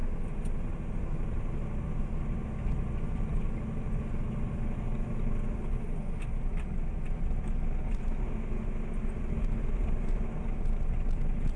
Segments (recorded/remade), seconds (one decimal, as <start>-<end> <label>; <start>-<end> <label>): 0.0-11.6 recorded